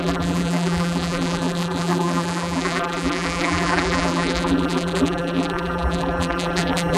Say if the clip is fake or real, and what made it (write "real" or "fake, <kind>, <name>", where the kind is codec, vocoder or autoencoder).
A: fake, vocoder, BigVGAN v2